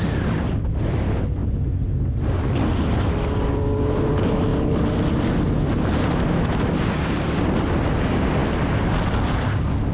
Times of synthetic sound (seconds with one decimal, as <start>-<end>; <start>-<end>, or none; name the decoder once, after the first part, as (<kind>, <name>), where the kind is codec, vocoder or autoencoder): none